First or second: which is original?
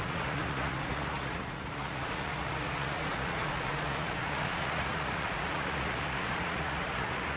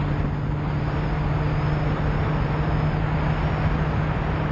second